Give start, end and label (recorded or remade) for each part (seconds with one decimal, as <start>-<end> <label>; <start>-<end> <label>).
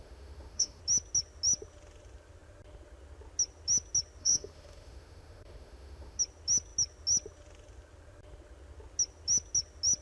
0.0-0.8 remade; 0.8-4.2 recorded; 4.2-6.2 remade; 6.2-10.0 recorded